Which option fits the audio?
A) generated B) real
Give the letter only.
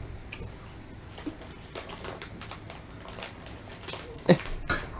B